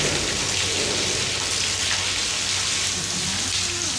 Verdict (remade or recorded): recorded